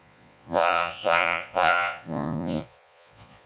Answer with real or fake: fake